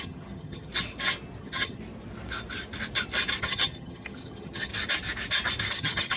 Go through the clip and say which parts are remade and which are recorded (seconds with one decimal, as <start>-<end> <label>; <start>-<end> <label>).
0.0-0.7 remade; 0.7-1.4 recorded; 1.4-1.8 remade; 1.8-3.4 recorded; 3.4-4.7 remade; 4.7-5.7 recorded; 5.7-6.2 remade